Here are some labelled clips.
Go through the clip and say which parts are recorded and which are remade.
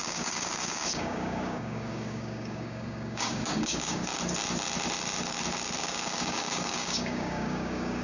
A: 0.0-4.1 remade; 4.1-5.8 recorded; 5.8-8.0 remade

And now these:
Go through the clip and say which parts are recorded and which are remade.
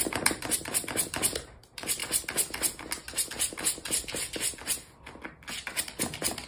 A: 0.0-2.0 remade; 2.0-5.8 recorded; 5.8-6.5 remade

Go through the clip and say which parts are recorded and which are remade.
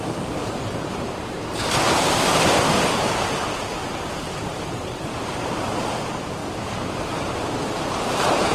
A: 0.0-6.4 remade; 6.4-7.3 recorded; 7.3-8.5 remade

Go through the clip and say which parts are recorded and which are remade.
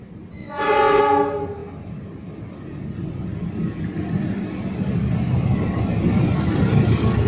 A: 0.0-0.4 recorded; 0.4-1.0 remade; 1.0-7.3 recorded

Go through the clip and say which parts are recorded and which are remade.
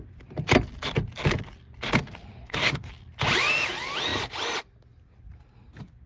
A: 0.0-2.3 recorded; 2.3-2.9 remade; 2.9-6.1 recorded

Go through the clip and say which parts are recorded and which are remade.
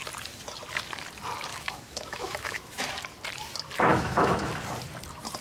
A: 0.0-1.5 recorded; 1.5-2.9 remade; 2.9-3.9 recorded; 3.9-4.5 remade; 4.5-5.4 recorded